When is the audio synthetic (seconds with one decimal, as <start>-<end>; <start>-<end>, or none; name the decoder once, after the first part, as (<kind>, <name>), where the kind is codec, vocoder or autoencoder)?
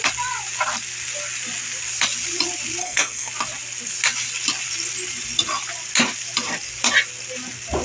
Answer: 2.8-3.3 (codec, SNAC)